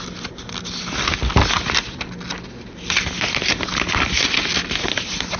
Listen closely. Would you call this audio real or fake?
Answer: real